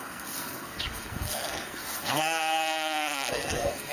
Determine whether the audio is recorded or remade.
remade